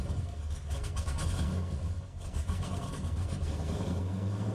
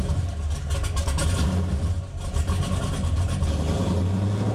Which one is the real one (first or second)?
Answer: second